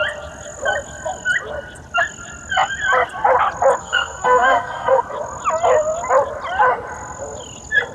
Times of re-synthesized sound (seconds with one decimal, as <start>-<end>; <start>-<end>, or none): 3.8-5.0